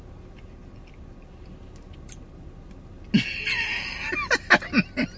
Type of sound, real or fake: real